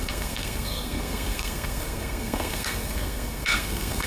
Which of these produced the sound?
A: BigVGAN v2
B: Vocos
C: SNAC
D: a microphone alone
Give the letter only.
C